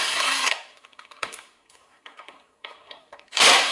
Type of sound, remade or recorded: remade